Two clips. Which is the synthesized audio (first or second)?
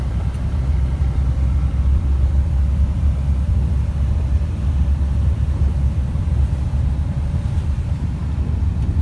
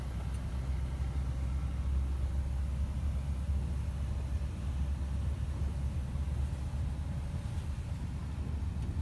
first